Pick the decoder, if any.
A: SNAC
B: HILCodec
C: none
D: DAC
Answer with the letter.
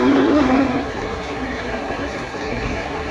A